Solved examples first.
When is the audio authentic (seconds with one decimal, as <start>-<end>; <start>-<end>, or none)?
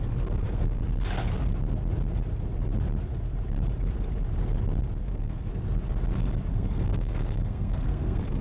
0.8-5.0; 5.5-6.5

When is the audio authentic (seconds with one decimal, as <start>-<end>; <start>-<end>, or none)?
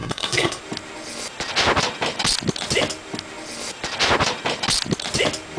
0.6-5.6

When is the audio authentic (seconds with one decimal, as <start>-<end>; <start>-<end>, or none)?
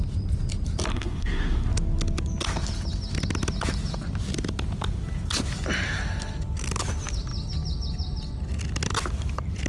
0.0-0.9; 1.7-9.7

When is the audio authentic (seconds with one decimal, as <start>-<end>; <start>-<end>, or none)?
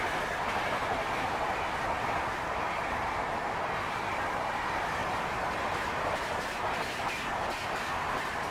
0.0-8.5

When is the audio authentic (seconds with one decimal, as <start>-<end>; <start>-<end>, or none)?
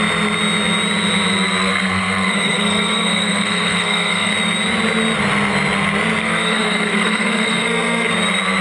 0.0-1.7; 4.3-6.2; 8.1-8.6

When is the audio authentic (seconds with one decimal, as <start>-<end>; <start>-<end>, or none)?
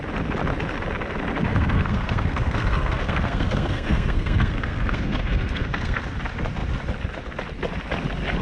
0.0-1.5; 6.0-8.4